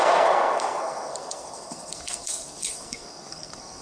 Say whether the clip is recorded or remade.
remade